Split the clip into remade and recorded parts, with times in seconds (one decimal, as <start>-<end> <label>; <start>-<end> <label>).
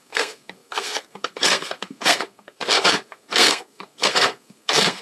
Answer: 0.0-5.0 remade